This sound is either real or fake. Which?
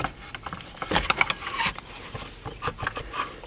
real